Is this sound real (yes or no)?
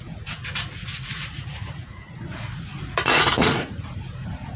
no